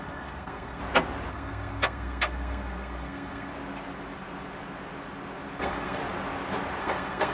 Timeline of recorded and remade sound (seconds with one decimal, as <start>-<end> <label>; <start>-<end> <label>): 0.0-0.8 remade; 0.8-1.3 recorded; 1.3-3.5 remade; 3.5-5.6 recorded; 5.6-6.0 remade; 6.0-6.8 recorded; 6.8-7.3 remade

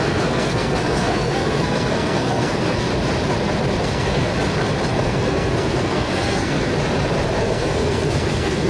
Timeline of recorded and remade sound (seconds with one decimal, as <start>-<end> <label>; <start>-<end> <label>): 0.0-2.9 remade; 2.9-3.8 recorded; 3.8-4.3 remade; 4.3-4.9 recorded; 4.9-6.7 remade; 6.7-7.4 recorded; 7.4-8.7 remade

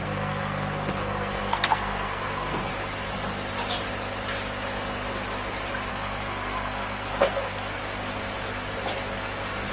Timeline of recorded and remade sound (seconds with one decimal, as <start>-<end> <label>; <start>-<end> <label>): 0.0-2.7 remade; 2.7-5.9 recorded; 5.9-7.8 remade; 7.8-9.7 recorded

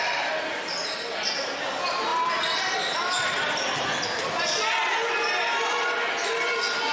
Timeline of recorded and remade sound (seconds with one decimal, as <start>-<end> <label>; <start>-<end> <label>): 0.0-6.9 recorded